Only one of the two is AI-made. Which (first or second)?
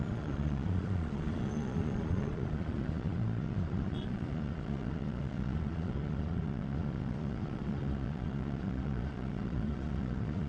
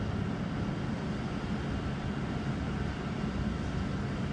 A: first